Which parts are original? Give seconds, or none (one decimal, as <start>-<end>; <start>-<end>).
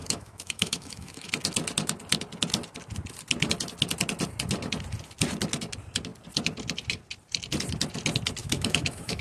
1.3-8.4